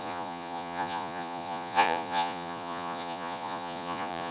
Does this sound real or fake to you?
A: fake